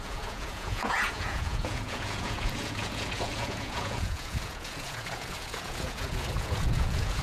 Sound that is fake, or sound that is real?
fake